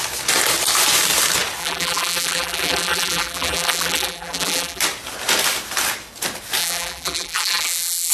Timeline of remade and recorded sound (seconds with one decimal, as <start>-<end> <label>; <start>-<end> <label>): 0.0-1.6 recorded; 1.6-4.8 remade; 4.8-6.6 recorded; 6.6-8.1 remade